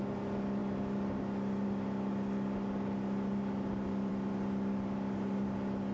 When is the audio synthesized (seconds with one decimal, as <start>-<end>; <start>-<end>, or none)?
none